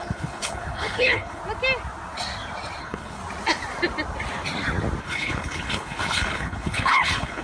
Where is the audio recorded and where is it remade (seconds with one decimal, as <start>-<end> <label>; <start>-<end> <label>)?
0.0-1.4 remade; 1.4-2.8 recorded; 2.8-3.2 remade; 3.2-5.0 recorded; 5.0-7.4 remade